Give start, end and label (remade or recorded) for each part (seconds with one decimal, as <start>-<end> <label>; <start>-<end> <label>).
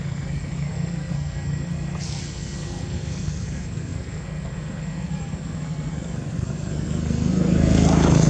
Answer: 0.0-8.3 remade